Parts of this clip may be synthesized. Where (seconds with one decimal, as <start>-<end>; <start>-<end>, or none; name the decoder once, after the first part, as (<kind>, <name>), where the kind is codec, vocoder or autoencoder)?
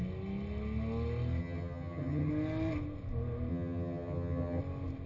1.4-2.3 (vocoder, HiFi-GAN); 3.5-4.6